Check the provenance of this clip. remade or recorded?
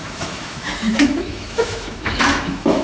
remade